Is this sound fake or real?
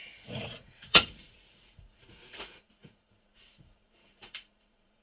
fake